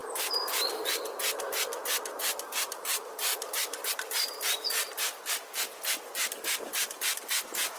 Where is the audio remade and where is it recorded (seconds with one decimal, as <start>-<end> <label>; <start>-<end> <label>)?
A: 0.0-3.3 recorded; 3.3-3.9 remade; 3.9-7.8 recorded